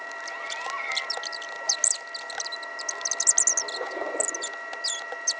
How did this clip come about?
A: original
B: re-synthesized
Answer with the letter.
A